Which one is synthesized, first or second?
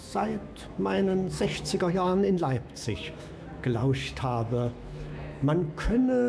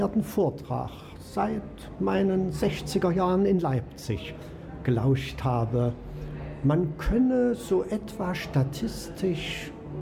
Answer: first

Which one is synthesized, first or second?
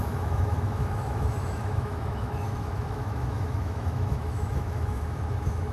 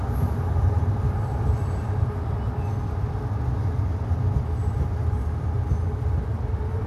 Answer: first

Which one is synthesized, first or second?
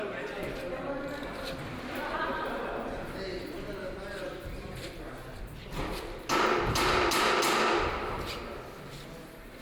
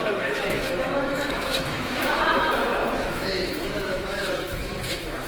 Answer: second